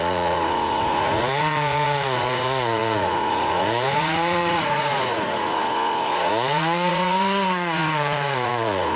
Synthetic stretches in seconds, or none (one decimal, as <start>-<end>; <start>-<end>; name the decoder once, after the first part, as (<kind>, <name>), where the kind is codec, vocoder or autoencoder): 0.0-8.9 (vocoder, Vocos)